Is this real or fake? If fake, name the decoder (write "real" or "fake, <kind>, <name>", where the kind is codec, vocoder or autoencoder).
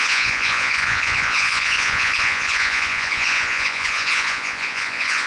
fake, vocoder, Vocos